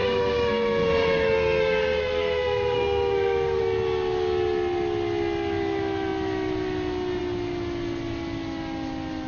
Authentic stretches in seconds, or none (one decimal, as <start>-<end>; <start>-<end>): 3.6-9.3